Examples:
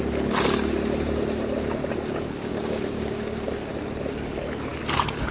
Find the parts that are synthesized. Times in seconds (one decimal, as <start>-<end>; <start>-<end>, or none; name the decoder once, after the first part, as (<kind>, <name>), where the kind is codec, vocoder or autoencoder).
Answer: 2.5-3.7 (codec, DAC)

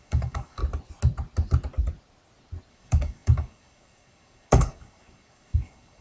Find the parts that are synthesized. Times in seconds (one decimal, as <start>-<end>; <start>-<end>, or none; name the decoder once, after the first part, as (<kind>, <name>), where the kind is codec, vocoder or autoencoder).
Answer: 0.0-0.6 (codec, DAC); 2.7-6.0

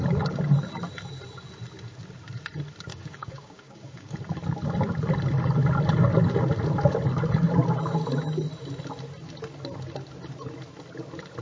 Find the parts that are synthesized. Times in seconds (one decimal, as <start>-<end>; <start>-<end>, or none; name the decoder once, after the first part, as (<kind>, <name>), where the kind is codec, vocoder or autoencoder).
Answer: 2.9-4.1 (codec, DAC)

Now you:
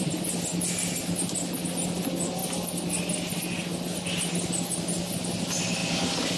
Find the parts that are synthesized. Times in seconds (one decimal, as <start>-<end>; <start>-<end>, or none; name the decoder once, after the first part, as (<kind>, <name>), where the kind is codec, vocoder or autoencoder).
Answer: none

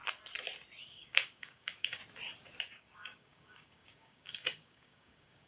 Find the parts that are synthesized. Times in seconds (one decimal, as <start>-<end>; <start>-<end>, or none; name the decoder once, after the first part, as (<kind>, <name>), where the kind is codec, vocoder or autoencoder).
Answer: 0.8-2.0 (codec, DAC); 2.6-5.5

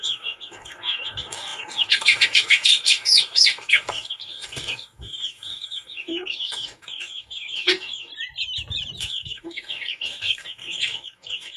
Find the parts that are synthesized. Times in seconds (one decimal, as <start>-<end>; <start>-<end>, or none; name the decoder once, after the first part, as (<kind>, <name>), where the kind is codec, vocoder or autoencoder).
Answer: 0.0-8.1 (codec, DAC); 9.0-11.6